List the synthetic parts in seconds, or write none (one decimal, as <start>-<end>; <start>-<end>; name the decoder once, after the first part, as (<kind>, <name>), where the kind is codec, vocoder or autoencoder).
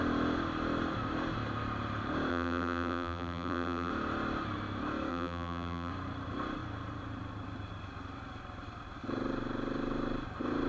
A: 2.3-3.9 (vocoder, BigVGAN v2); 5.1-5.9